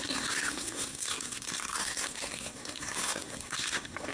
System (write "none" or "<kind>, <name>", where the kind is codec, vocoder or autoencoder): codec, SNAC